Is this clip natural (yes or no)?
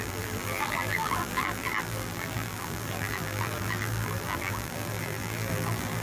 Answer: no